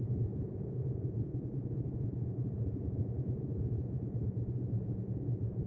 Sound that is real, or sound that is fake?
fake